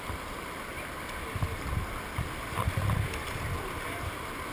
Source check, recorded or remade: recorded